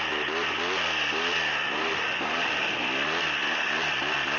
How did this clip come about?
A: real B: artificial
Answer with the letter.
A